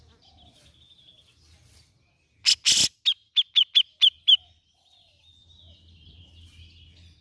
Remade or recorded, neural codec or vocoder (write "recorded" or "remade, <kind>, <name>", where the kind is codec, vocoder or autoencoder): recorded